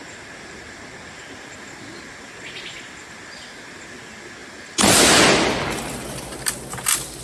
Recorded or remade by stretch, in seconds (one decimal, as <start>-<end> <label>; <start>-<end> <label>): 0.0-7.2 recorded